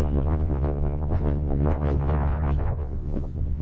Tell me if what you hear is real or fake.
fake